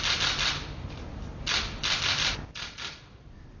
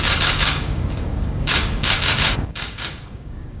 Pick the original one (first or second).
first